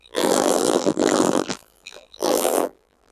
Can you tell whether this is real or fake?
fake